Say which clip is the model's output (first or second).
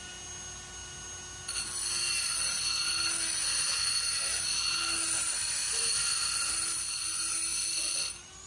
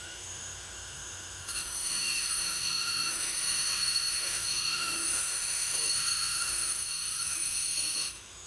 second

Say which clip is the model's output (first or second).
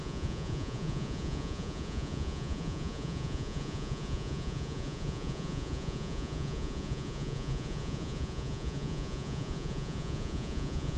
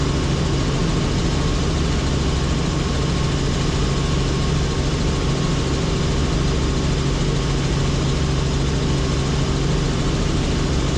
first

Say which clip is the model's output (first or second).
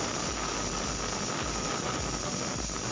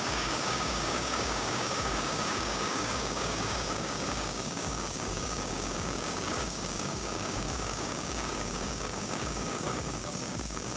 second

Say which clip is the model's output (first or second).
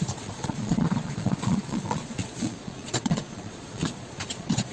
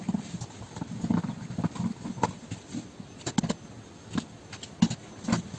first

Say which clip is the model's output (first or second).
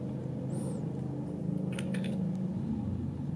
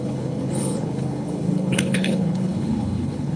second